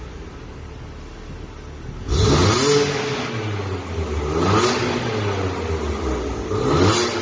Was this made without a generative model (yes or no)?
yes